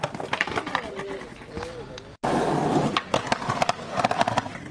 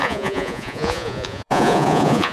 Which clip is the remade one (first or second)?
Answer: second